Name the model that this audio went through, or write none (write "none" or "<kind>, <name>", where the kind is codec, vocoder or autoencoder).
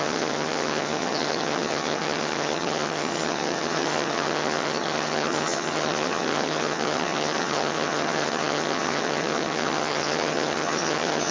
vocoder, HiFi-GAN